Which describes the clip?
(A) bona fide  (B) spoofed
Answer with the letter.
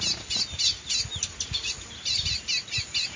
A